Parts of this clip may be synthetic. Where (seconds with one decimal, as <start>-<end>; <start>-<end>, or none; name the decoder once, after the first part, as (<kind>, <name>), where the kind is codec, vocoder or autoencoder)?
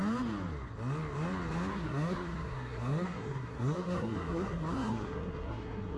1.7-6.0 (codec, SNAC)